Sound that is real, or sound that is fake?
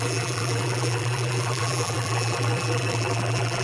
fake